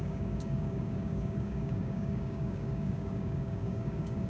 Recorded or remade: remade